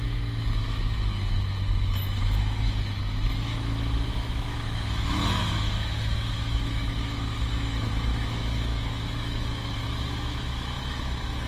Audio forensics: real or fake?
fake